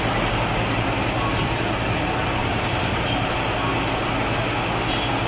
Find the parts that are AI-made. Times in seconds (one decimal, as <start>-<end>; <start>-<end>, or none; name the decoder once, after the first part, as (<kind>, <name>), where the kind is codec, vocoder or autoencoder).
2.4-3.3 (vocoder, BigVGAN v2)